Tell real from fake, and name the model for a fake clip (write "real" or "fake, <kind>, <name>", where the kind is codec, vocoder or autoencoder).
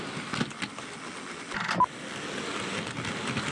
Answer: real